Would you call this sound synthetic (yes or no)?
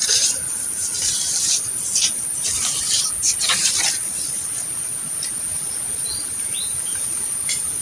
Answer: yes